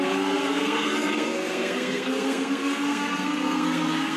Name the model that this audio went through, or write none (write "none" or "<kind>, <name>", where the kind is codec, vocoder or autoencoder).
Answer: codec, SNAC